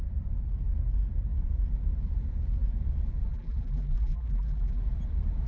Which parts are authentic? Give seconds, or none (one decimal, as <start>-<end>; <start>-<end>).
0.0-3.3; 4.8-5.5